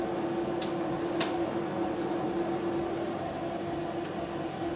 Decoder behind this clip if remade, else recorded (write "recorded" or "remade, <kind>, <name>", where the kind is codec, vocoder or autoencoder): recorded